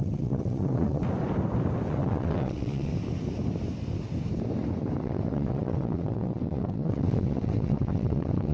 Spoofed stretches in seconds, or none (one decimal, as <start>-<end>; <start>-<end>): 0.0-1.0; 1.9-2.9; 5.0-8.5

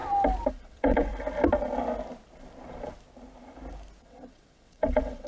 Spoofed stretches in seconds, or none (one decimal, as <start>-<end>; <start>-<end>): 0.5-1.1; 4.0-5.3

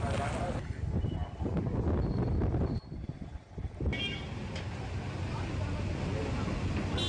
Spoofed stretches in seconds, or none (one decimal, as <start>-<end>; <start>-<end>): none

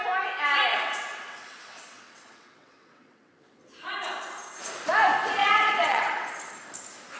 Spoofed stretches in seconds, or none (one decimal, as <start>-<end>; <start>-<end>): 0.7-3.6; 5.4-6.3